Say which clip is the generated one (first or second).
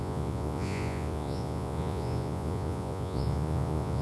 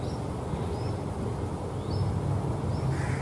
first